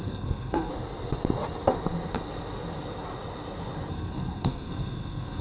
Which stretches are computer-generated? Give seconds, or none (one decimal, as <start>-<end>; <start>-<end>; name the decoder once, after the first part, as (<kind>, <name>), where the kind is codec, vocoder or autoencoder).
0.0-0.7 (codec, SNAC); 3.9-5.4